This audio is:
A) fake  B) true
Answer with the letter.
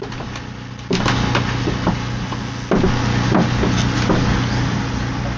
B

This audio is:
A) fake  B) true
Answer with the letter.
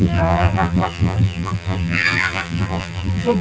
A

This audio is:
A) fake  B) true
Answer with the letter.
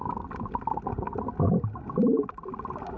B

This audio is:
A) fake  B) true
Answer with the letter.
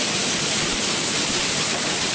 A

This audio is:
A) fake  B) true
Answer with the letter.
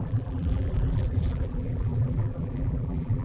A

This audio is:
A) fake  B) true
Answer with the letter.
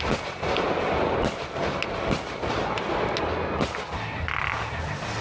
B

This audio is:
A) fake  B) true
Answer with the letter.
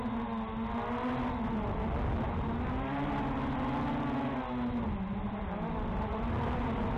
B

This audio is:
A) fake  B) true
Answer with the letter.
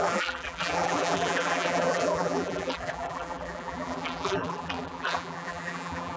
A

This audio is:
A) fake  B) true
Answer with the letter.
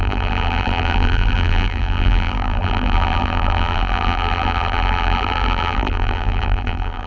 A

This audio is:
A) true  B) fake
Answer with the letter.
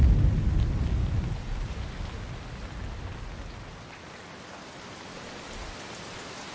A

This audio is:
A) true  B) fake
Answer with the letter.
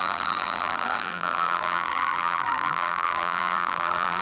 B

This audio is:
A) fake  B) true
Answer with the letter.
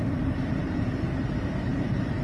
A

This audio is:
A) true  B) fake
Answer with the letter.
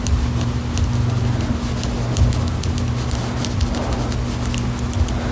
A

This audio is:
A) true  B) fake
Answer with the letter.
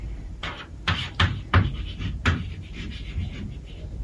B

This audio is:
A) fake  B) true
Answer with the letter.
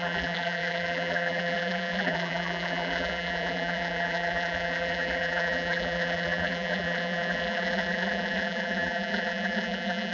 A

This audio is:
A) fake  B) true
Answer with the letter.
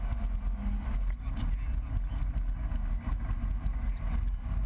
B